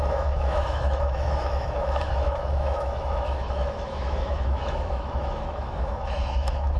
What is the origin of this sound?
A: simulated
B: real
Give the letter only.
A